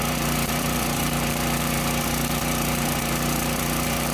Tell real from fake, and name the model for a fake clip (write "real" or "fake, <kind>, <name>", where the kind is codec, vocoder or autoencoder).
fake, vocoder, BigVGAN v2